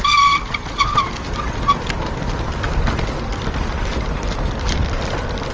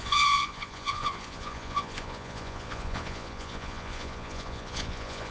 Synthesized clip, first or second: second